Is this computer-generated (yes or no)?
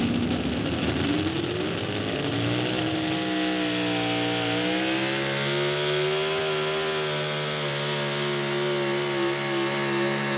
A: no